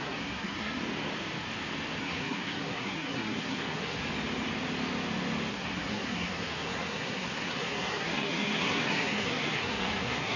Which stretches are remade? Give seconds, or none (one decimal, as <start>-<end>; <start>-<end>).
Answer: 0.0-0.8; 2.0-4.0; 5.5-10.4